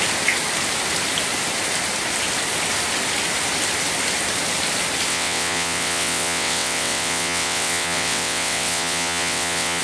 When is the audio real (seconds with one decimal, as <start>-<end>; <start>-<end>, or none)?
0.0-5.1